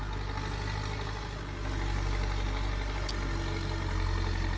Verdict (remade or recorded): recorded